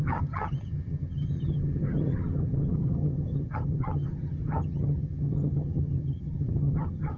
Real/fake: fake